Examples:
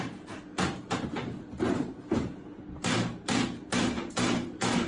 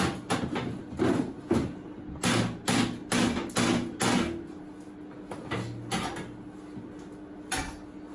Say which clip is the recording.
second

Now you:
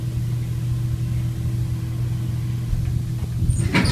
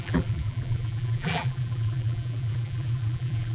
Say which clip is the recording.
first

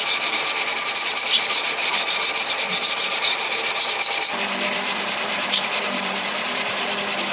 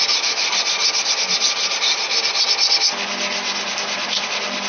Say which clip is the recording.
second